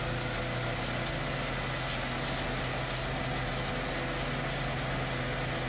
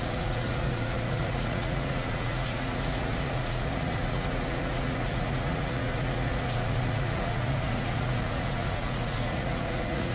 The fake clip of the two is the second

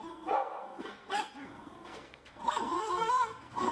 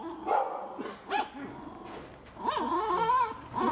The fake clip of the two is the first